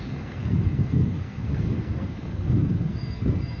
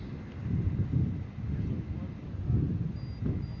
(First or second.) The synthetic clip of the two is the first